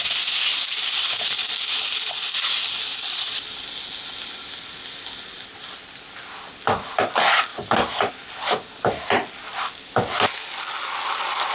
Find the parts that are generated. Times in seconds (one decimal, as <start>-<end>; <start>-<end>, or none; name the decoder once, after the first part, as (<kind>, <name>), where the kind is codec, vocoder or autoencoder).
none